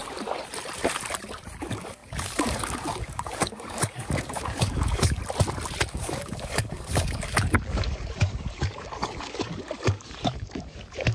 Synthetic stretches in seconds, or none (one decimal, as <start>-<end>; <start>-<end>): 1.6-5.2; 5.9-11.1